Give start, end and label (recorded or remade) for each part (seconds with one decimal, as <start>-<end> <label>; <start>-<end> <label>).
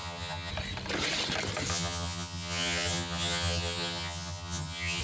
0.0-0.5 remade; 0.5-1.7 recorded; 1.7-5.0 remade